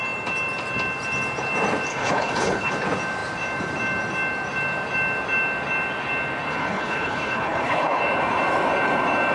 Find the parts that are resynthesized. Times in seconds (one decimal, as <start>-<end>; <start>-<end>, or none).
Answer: 1.9-2.7; 6.5-8.0